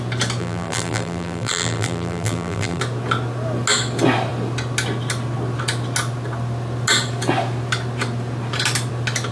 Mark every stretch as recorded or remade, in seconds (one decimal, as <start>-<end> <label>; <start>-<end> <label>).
0.0-0.4 recorded; 0.4-2.8 remade; 2.8-9.3 recorded